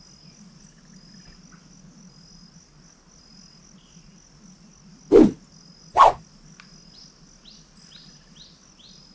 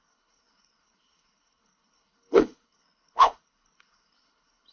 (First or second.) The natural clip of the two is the first